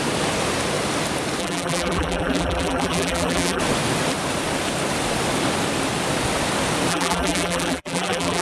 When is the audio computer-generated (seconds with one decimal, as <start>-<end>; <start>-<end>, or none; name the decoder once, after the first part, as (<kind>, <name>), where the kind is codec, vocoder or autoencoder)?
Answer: 1.4-3.6 (vocoder, BigVGAN v2); 6.9-8.4